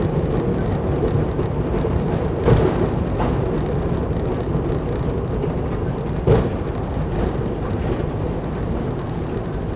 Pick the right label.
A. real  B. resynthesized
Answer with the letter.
A